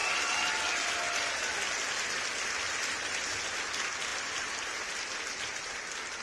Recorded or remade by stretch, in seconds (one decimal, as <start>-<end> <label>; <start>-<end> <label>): 0.0-0.5 remade; 0.5-4.1 recorded; 4.1-5.4 remade; 5.4-6.2 recorded